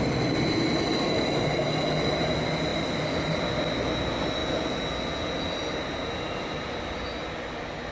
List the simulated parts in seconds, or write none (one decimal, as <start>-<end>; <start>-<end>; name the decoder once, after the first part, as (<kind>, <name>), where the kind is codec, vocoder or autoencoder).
2.7-3.8 (vocoder, BigVGAN v2)